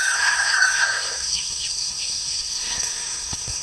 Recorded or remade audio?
remade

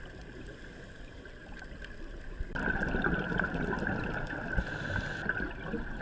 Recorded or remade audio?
recorded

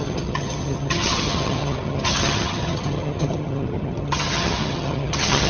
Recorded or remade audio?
remade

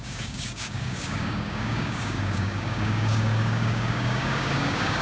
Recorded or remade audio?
remade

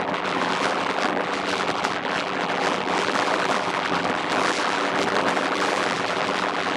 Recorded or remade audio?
remade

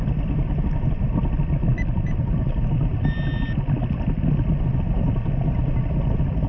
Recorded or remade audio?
recorded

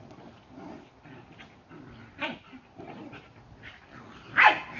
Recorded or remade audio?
recorded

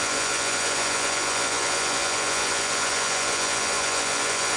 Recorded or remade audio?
remade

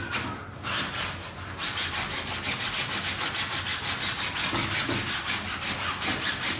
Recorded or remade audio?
recorded